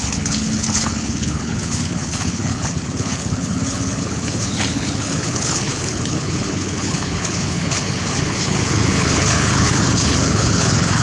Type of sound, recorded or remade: remade